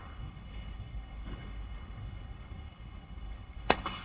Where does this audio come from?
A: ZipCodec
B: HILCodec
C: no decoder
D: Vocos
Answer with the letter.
B